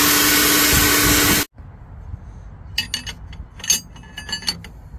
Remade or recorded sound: recorded